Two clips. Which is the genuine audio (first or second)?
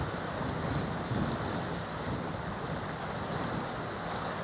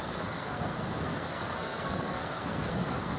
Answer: first